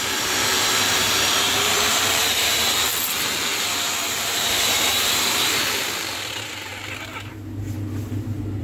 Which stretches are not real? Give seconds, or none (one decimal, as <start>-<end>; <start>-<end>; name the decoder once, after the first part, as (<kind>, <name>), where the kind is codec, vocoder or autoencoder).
0.0-2.9 (vocoder, BigVGAN v2); 3.6-6.7